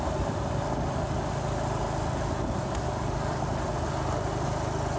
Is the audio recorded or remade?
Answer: recorded